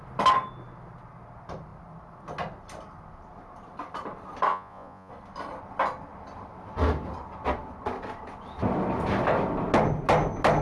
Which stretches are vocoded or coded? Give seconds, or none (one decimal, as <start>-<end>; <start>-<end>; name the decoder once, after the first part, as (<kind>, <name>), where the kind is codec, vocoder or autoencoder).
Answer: 4.5-5.1 (vocoder, Vocos)